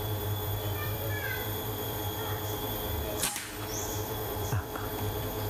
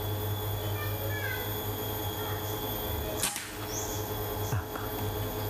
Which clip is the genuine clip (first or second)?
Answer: second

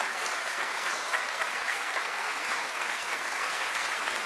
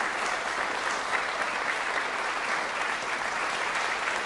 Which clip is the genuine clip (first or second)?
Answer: second